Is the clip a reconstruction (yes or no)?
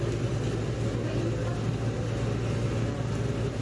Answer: no